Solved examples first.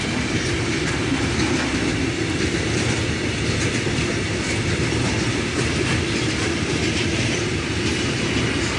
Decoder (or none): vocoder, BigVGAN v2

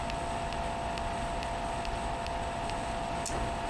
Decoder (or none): none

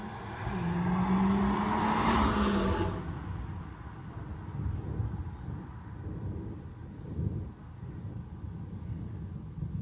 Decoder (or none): none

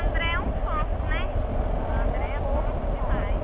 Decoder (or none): none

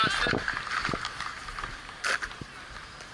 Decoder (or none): none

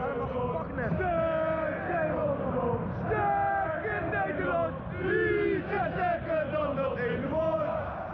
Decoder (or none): none